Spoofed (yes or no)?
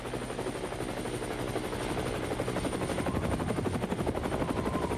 no